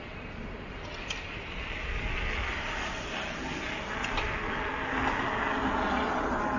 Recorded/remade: recorded